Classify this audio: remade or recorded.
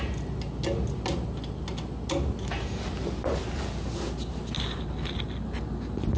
recorded